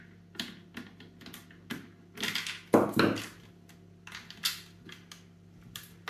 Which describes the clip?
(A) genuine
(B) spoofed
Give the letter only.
A